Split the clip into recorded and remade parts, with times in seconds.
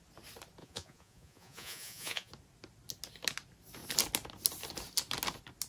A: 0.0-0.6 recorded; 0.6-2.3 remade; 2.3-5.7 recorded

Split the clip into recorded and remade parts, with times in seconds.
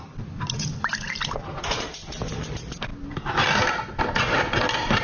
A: 0.0-5.0 recorded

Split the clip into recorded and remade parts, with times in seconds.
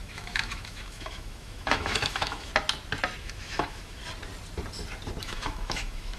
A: 0.0-2.5 remade; 2.5-3.2 recorded; 3.2-4.0 remade; 4.0-5.2 recorded; 5.2-6.2 remade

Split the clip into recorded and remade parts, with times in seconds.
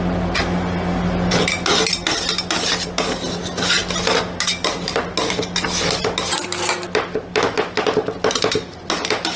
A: 0.0-9.4 recorded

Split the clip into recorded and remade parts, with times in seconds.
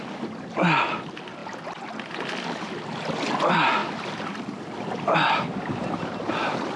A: 0.0-6.8 recorded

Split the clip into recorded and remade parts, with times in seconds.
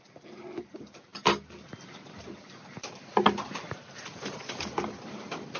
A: 0.0-5.6 recorded